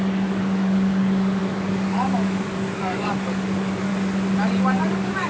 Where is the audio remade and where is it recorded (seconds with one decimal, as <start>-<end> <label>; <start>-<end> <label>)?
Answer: 0.0-3.9 remade; 3.9-4.8 recorded; 4.8-5.3 remade